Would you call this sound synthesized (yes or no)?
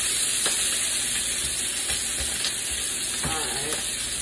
no